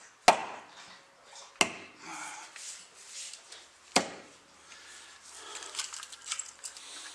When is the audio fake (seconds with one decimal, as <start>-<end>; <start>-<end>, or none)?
none